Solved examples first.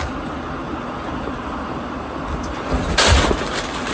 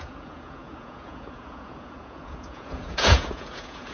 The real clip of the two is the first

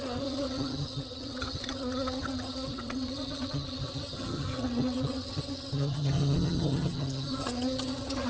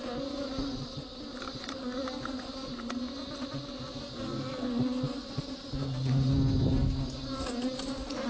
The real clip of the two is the second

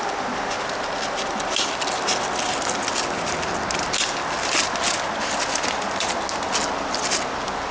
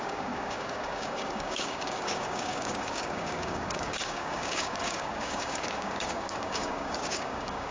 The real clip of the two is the first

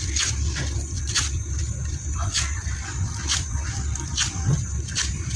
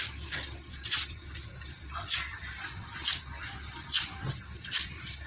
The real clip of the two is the second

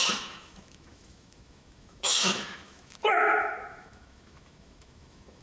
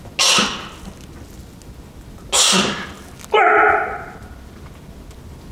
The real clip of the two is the second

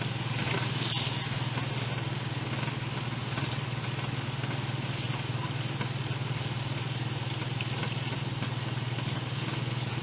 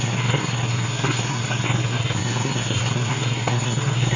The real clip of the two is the first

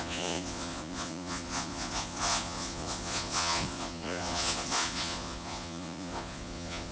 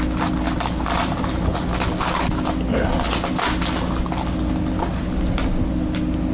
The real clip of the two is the second